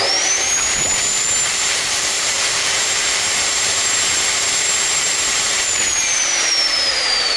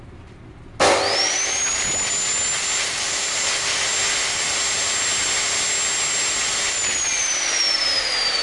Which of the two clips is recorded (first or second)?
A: second